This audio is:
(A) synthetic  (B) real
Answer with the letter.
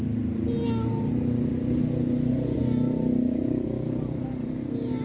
B